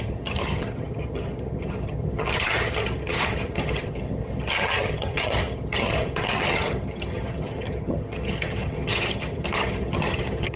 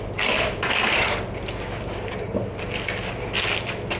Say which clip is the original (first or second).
second